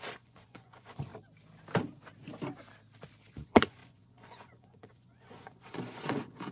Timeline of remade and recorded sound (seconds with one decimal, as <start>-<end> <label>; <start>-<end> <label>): 0.0-1.1 remade; 1.1-3.3 recorded; 3.3-6.5 remade